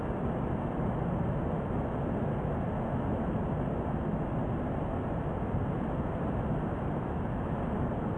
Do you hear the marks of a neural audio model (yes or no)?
no